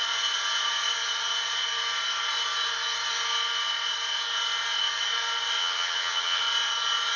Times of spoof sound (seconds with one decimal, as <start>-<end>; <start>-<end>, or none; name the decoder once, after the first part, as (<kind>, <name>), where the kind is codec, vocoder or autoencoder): 5.6-6.4 (vocoder, HiFi-GAN)